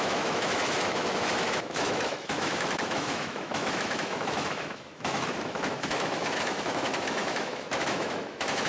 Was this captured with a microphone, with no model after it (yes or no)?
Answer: no